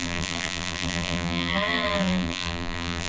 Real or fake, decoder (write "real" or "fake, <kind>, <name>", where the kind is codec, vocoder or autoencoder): fake, vocoder, BigVGAN v2